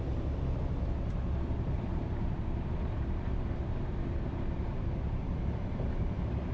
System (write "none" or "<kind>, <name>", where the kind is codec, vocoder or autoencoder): vocoder, BigVGAN v2